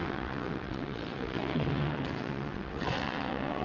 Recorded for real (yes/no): no